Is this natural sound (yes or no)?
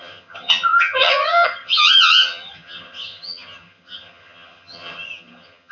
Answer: no